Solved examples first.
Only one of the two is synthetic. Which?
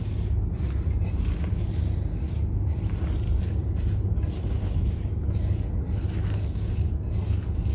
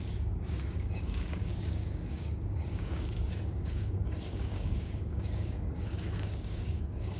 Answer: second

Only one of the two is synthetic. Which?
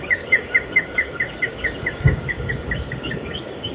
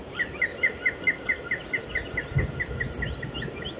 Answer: first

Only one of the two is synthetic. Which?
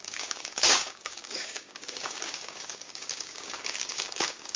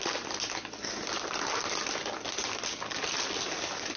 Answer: first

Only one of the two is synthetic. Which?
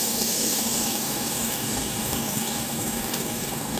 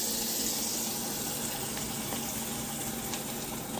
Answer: first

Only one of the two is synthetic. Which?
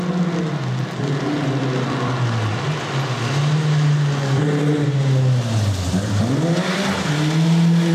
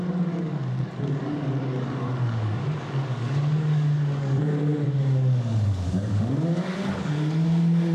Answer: second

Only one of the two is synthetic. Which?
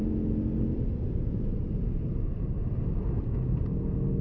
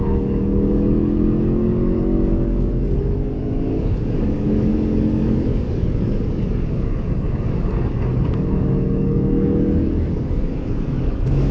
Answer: second